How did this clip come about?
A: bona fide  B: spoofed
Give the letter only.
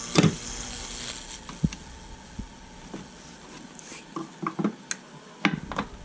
A